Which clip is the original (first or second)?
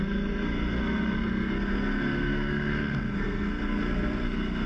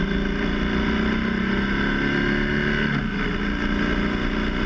second